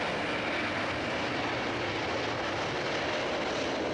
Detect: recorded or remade recorded